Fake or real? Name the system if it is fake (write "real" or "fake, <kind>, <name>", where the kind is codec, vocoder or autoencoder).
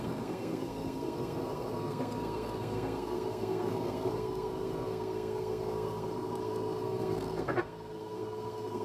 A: fake, codec, SNAC